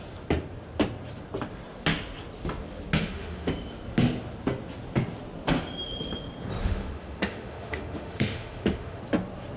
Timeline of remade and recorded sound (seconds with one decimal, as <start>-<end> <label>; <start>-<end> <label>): 0.0-3.0 recorded; 3.0-3.5 remade; 3.5-6.6 recorded; 6.6-9.0 remade; 9.0-9.6 recorded